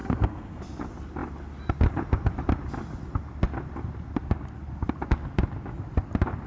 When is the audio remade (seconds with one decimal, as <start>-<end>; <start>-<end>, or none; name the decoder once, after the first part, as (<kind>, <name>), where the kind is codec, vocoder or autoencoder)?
0.0-0.6 (codec, SNAC)